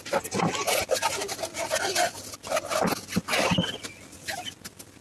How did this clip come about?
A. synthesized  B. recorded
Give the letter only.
B